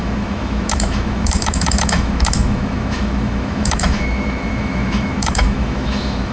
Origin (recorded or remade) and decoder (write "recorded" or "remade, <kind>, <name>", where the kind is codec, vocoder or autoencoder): remade, autoencoder, DAC-VAE